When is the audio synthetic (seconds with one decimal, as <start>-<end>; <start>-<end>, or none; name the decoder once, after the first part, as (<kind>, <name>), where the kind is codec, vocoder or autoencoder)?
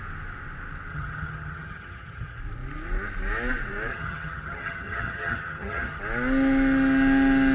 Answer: 0.9-2.4 (vocoder, HiFi-GAN); 3.9-6.0